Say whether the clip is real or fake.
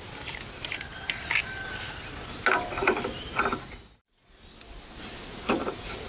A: real